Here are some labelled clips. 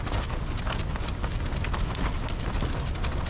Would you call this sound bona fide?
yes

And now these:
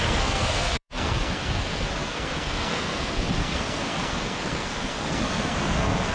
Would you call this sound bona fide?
no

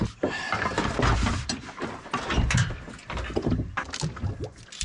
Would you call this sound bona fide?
yes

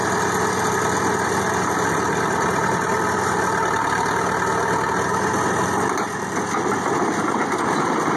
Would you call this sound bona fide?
yes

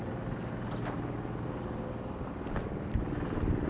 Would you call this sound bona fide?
yes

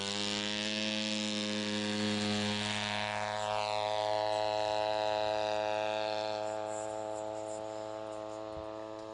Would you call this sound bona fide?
yes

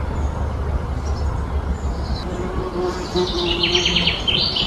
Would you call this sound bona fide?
yes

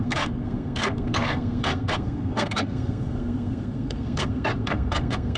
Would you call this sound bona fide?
no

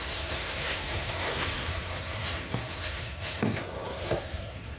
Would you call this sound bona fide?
no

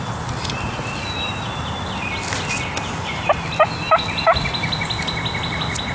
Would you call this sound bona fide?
yes